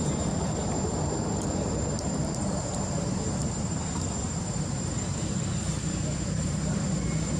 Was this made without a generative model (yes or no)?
no